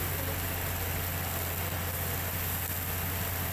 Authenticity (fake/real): real